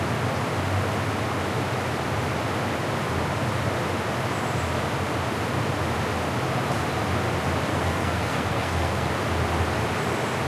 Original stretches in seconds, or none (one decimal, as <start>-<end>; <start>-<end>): 0.0-7.7; 9.1-10.5